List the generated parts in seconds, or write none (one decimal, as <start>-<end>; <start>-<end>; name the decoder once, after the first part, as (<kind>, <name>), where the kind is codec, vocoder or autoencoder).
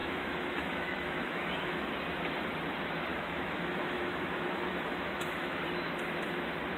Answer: 0.0-1.9 (autoencoder, DAC-VAE); 3.1-5.6